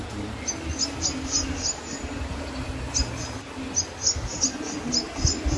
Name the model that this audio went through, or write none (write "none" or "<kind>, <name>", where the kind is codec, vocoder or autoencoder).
none